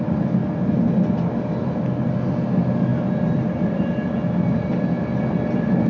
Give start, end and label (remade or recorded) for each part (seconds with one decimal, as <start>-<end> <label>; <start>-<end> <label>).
0.0-5.9 recorded